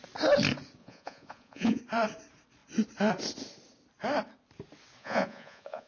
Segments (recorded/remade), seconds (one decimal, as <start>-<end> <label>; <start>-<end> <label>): 0.0-0.8 recorded; 0.8-1.8 remade; 1.8-5.0 recorded; 5.0-5.9 remade